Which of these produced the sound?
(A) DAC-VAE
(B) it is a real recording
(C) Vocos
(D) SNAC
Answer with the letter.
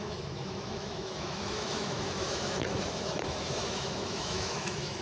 A